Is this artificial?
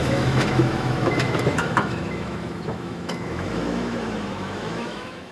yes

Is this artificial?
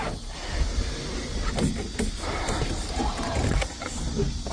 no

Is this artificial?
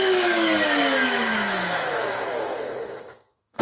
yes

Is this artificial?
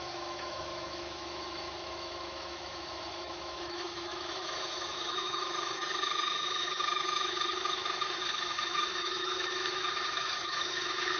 yes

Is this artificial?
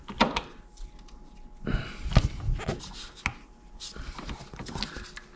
no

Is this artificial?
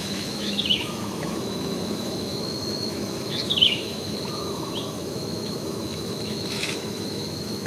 yes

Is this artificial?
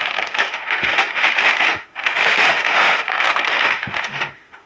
yes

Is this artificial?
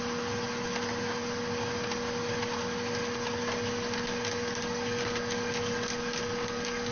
no